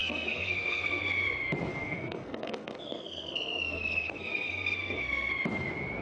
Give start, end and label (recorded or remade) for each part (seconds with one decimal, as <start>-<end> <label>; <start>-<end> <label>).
0.0-1.0 remade; 1.0-1.7 recorded; 1.7-5.3 remade; 5.3-6.0 recorded

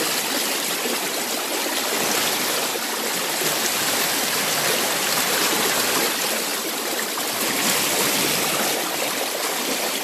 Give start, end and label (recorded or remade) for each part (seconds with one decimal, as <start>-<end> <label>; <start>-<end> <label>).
0.0-10.0 recorded

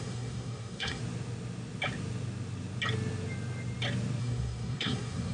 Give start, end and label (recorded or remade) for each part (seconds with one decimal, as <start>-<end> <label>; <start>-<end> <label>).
0.0-1.0 remade; 1.0-4.2 recorded; 4.2-5.3 remade